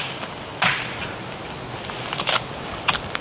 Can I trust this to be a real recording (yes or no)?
yes